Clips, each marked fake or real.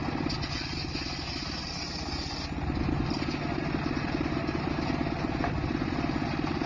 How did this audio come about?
real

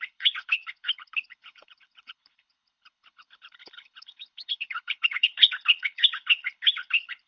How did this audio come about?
fake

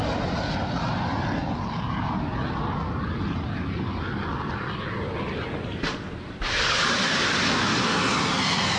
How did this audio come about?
real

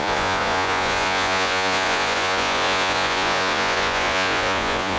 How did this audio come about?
fake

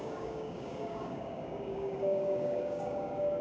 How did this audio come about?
fake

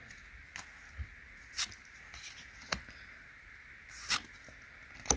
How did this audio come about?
real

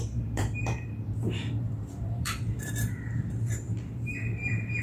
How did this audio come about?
fake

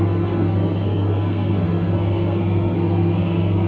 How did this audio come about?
fake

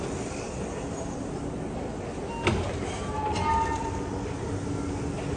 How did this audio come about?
real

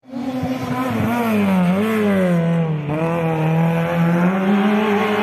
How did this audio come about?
real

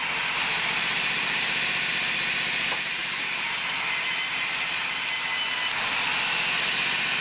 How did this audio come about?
real